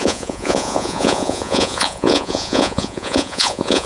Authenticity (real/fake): fake